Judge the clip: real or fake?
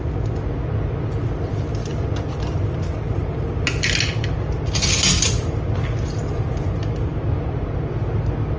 real